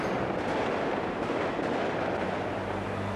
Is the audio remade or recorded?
recorded